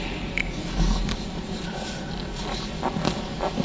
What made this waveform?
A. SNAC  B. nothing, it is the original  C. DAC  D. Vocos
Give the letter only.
B